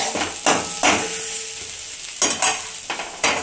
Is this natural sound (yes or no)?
yes